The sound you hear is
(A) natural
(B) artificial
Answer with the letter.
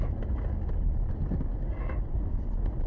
A